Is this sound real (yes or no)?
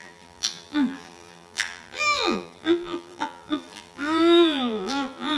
no